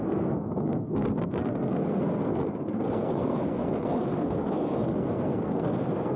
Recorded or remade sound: remade